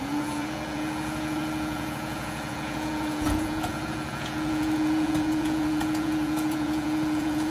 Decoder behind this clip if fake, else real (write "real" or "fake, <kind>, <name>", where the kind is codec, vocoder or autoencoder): fake, vocoder, Vocos